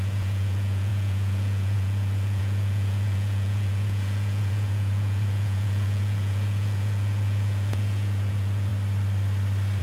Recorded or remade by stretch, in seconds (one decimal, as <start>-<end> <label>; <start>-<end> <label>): 0.0-8.7 remade; 8.7-9.8 recorded